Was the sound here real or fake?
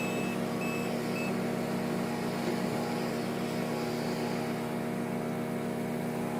real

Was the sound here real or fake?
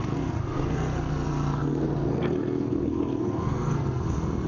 fake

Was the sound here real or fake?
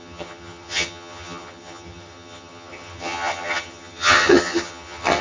fake